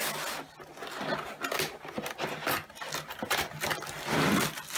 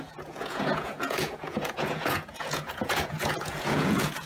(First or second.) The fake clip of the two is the second